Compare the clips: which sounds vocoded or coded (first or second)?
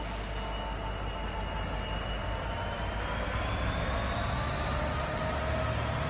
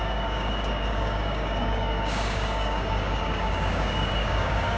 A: second